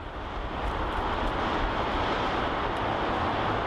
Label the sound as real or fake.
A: real